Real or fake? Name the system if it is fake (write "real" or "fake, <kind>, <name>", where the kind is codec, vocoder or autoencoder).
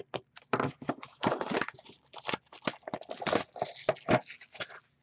real